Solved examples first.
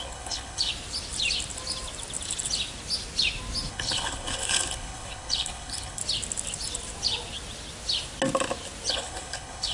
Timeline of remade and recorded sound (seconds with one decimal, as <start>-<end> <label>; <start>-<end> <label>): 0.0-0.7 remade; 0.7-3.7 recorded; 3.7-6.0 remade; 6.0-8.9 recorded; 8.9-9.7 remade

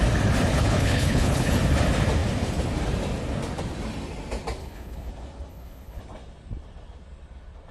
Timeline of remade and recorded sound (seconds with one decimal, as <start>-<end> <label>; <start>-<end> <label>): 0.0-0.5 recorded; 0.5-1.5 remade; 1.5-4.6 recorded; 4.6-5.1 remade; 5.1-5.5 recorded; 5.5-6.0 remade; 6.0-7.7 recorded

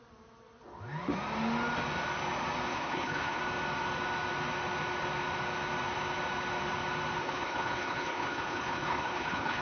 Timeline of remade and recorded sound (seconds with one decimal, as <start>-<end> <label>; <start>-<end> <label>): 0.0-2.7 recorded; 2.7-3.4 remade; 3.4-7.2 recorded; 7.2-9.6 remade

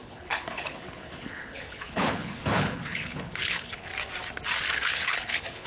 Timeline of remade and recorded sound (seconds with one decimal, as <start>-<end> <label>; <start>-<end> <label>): 0.0-3.9 remade; 3.9-4.7 recorded; 4.7-5.7 remade